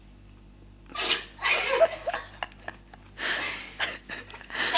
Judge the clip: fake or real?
real